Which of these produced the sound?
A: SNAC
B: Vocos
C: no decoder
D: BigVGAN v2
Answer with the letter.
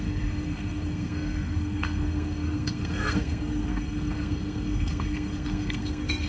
A